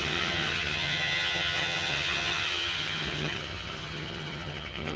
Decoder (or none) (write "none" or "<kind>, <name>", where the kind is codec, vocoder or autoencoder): vocoder, HiFi-GAN